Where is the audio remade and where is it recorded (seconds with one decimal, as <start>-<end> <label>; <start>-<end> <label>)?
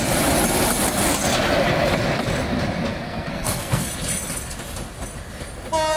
0.0-2.9 recorded; 2.9-3.9 remade; 3.9-6.0 recorded